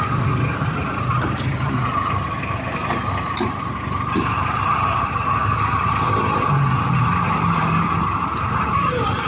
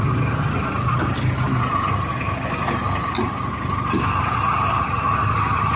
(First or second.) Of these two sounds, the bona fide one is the second